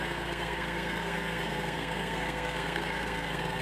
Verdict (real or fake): fake